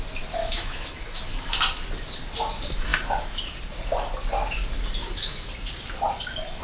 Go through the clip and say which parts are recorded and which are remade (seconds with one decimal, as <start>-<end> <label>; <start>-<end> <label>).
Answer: 0.0-0.4 recorded; 0.4-1.3 remade; 1.3-5.0 recorded; 5.0-5.5 remade; 5.5-6.6 recorded

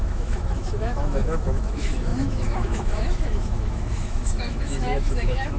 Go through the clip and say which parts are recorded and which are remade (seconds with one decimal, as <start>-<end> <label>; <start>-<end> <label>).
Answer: 0.0-5.6 remade

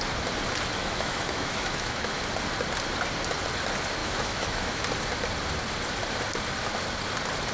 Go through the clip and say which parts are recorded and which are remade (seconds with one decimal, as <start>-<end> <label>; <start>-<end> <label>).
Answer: 0.0-0.8 recorded; 0.8-2.2 remade; 2.2-4.0 recorded; 4.0-4.8 remade; 4.8-7.5 recorded

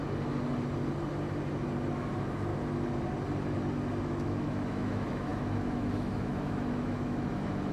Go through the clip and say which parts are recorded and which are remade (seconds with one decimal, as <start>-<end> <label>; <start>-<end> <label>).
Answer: 0.0-1.9 recorded; 1.9-2.5 remade; 2.5-4.0 recorded; 4.0-7.7 remade

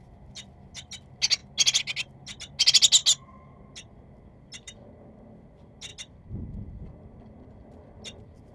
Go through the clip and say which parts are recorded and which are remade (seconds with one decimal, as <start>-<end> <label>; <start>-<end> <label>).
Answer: 0.0-8.5 recorded